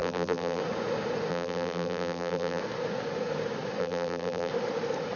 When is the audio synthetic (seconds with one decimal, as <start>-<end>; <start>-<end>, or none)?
0.0-0.6; 1.3-2.6; 3.8-4.5